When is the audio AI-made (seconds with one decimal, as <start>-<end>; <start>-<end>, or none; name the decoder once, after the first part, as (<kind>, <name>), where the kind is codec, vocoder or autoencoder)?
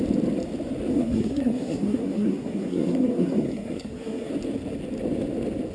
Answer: 0.9-4.3 (codec, SNAC)